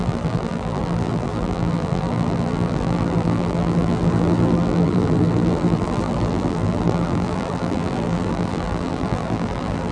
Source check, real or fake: fake